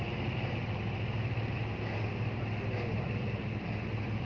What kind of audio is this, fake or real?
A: real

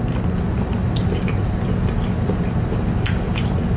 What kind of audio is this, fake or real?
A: real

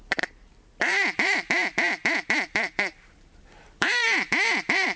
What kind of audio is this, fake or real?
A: fake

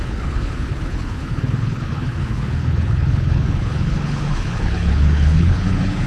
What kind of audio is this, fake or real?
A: fake